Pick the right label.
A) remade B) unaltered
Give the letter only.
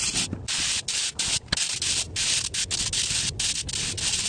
B